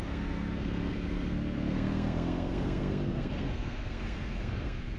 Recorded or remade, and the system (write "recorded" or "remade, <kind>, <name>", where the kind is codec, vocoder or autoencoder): remade, codec, SNAC